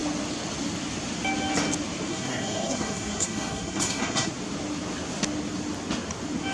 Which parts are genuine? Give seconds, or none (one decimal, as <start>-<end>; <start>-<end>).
0.0-2.1; 4.3-6.5